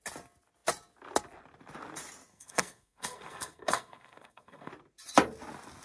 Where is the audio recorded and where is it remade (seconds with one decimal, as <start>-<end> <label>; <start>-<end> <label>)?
0.0-2.3 recorded; 2.3-4.7 remade; 4.7-5.8 recorded